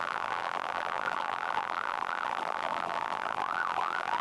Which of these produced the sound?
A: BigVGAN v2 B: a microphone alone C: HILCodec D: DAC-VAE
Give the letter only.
A